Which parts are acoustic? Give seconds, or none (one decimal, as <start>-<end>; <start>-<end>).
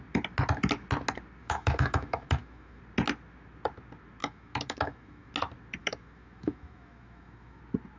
0.0-1.4; 2.8-4.2; 5.3-5.8; 7.6-8.0